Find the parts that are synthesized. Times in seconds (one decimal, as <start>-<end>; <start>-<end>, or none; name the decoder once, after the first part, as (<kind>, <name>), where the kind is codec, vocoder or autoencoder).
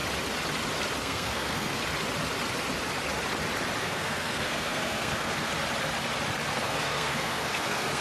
1.0-1.8 (codec, SNAC); 3.8-5.5; 6.5-8.0